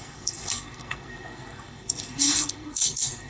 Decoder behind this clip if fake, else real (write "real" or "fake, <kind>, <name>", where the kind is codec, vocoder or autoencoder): fake, codec, SNAC